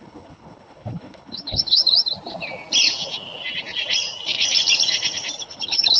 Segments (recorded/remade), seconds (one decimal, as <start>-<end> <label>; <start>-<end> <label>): 0.0-1.8 remade; 1.8-5.4 recorded; 5.4-6.0 remade